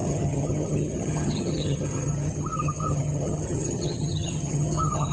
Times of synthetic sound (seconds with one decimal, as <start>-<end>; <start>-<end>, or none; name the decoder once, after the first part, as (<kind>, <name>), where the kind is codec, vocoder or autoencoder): 0.0-5.1 (vocoder, HiFi-GAN)